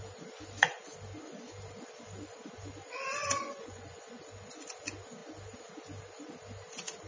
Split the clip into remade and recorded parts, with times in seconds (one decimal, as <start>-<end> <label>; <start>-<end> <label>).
0.0-3.2 recorded; 3.2-4.2 remade; 4.2-7.1 recorded